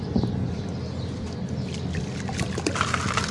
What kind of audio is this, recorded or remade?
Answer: recorded